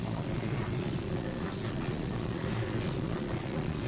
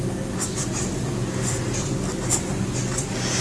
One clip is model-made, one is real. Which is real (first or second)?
second